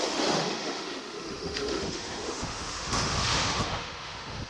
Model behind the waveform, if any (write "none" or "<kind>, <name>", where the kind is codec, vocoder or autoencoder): autoencoder, DAC-VAE